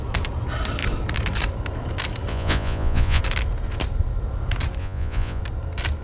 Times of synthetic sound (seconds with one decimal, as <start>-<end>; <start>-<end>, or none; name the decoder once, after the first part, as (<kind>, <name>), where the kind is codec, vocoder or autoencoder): 2.3-3.2 (vocoder, Vocos); 4.8-5.4